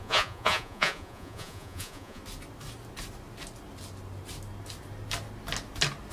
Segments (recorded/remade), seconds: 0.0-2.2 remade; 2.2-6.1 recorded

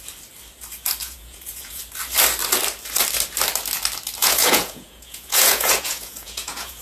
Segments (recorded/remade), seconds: 0.0-1.0 recorded; 1.0-1.8 remade; 1.8-4.2 recorded; 4.2-6.8 remade

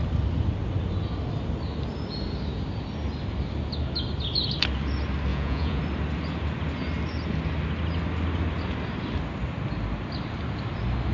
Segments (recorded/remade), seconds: 0.0-5.3 recorded; 5.3-5.8 remade; 5.8-11.1 recorded

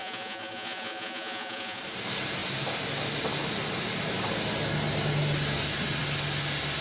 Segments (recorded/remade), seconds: 0.0-1.8 remade; 1.8-6.8 recorded